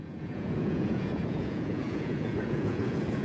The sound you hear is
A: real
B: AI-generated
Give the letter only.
B